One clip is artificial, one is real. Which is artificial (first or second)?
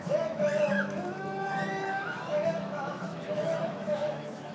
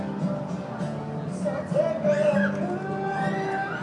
first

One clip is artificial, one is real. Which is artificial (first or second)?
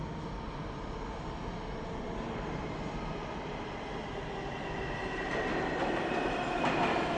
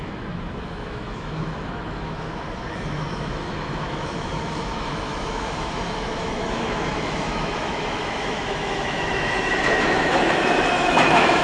second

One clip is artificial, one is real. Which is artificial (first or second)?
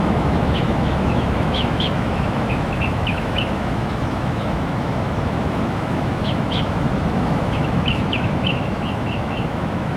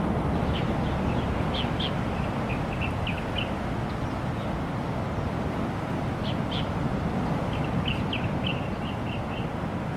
first